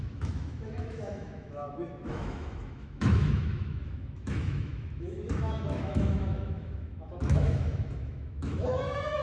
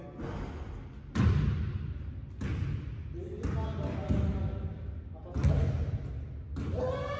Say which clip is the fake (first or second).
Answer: first